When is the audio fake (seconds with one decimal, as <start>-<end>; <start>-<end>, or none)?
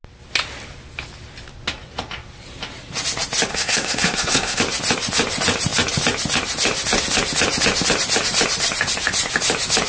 3.5-4.6